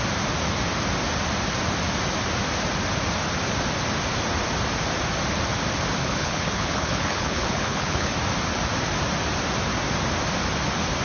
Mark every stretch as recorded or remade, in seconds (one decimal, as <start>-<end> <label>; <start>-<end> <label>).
0.0-6.0 recorded; 6.0-8.1 remade; 8.1-11.0 recorded